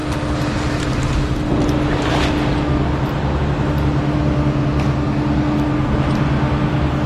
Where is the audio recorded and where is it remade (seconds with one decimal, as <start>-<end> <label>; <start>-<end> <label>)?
0.0-7.1 recorded